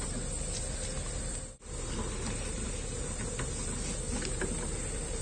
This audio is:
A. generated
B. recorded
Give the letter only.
B